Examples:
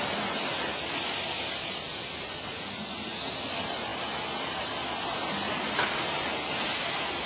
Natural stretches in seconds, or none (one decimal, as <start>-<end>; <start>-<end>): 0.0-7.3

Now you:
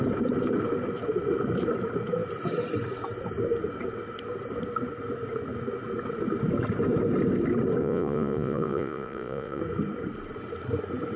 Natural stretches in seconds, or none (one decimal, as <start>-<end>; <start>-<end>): 0.0-7.8; 9.6-11.2

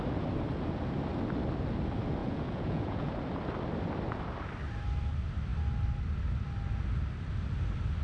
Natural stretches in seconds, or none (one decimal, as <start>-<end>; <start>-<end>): 0.0-2.2; 3.1-8.0

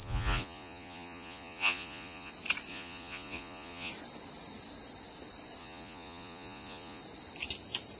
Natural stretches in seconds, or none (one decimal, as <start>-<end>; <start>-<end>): 2.3-2.7; 3.9-5.6; 7.0-8.0

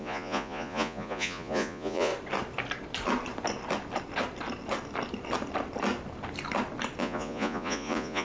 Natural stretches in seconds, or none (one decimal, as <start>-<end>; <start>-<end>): 2.1-7.0

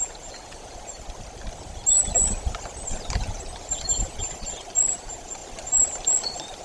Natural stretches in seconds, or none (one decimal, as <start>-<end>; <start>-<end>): 0.9-4.9; 5.4-6.6

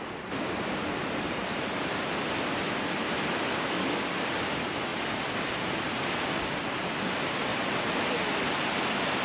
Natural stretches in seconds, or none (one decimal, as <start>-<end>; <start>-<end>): 0.0-9.2